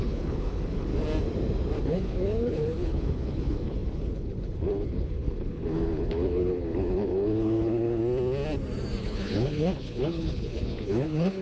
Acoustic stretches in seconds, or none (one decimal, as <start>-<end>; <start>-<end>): 0.9-1.8; 8.0-9.0